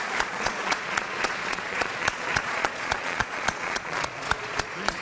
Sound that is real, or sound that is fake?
fake